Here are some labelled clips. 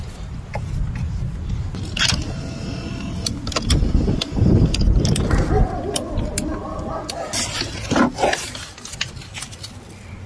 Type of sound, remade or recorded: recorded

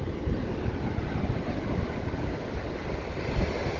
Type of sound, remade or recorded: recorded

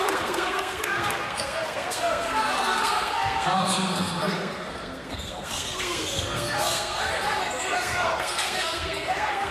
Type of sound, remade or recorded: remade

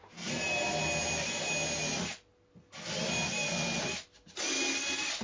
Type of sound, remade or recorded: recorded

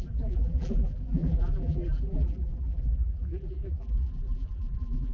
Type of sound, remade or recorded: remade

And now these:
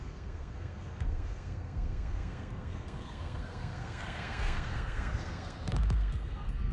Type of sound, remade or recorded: remade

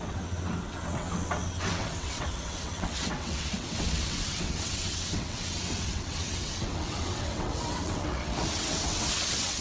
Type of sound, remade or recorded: remade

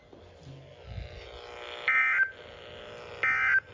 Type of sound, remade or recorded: recorded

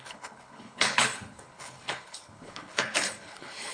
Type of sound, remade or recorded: remade